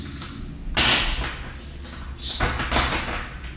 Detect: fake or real real